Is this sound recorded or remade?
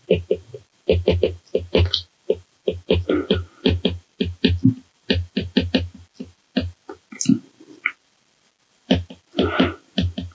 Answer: recorded